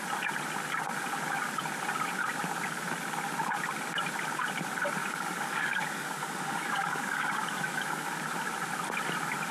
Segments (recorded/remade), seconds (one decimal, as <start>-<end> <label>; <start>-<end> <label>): 0.0-5.0 recorded; 5.0-8.2 remade; 8.2-9.5 recorded